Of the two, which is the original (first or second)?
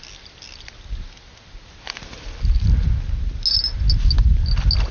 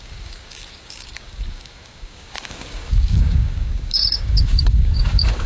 first